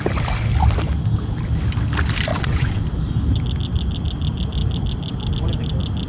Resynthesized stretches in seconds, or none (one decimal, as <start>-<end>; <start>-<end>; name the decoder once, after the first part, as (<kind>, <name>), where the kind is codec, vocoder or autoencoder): 2.3-2.8 (vocoder, WaveNeXt)